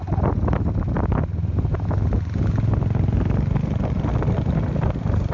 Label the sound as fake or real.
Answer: real